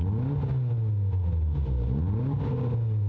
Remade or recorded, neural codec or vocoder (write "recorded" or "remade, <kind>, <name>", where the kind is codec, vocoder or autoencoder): recorded